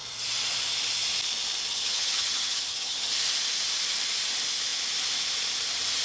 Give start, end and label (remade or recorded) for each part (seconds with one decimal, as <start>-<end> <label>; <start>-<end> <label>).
0.0-1.7 recorded; 1.7-3.1 remade; 3.1-6.0 recorded